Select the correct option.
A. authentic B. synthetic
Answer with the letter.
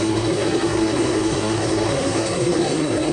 B